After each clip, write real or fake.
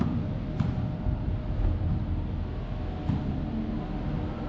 real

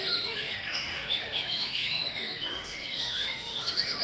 fake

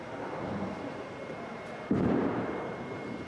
fake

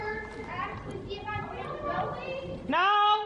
real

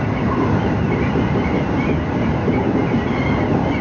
real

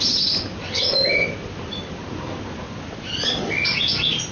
real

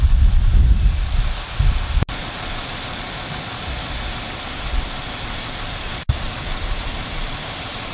real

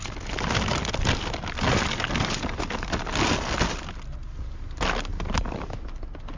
real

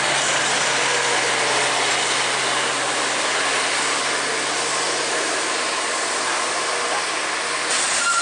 real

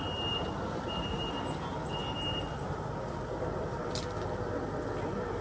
fake